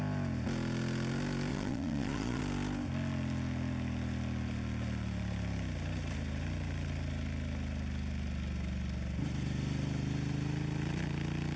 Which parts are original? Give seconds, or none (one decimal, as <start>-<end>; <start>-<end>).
0.0-1.5; 2.4-11.6